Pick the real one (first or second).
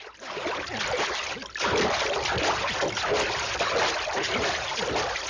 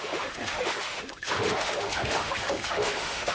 first